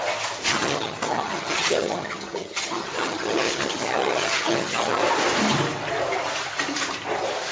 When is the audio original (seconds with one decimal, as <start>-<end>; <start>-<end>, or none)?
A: 0.0-0.5; 5.0-7.5